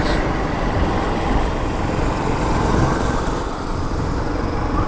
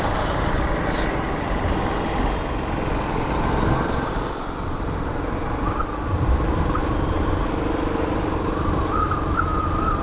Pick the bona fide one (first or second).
second